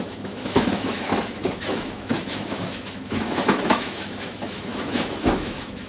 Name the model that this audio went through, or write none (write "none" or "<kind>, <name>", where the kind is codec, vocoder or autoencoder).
autoencoder, DAC-VAE